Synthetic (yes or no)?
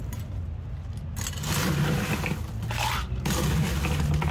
no